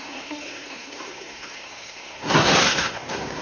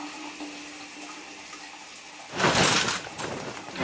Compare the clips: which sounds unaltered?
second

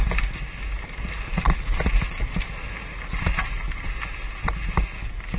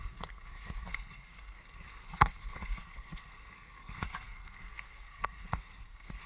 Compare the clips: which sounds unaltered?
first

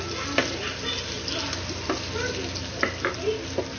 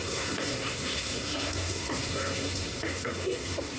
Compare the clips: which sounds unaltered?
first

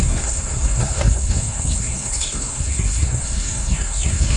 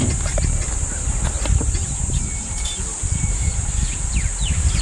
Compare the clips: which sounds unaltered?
second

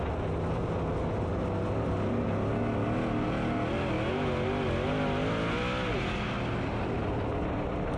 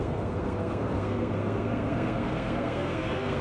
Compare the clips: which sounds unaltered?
first